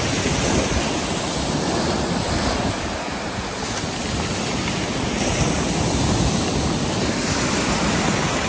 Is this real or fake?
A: real